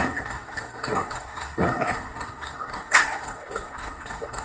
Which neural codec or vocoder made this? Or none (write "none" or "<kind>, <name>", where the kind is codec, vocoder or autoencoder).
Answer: codec, SNAC